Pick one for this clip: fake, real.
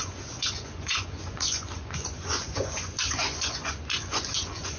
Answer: fake